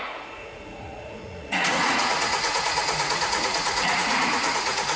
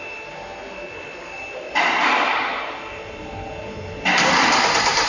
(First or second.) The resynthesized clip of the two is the first